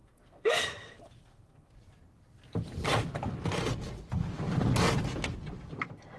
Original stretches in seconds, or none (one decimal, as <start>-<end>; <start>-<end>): 1.7-6.2